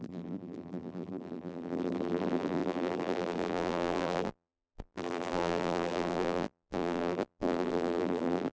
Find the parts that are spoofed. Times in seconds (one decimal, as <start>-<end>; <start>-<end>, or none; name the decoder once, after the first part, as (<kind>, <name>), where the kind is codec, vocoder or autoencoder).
0.0-8.5 (vocoder, BigVGAN v2)